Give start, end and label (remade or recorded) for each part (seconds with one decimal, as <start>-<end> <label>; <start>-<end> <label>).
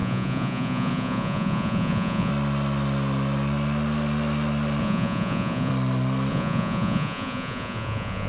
0.0-2.3 remade; 2.3-4.8 recorded; 4.8-5.7 remade; 5.7-6.3 recorded; 6.3-8.3 remade